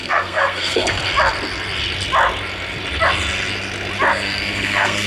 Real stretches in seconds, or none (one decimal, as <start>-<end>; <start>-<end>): 1.0-4.1